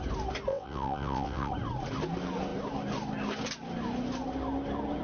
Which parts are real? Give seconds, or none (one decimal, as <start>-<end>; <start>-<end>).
0.0-0.5; 1.5-5.0